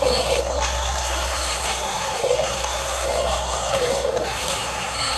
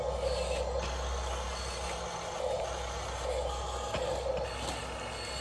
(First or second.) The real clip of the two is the second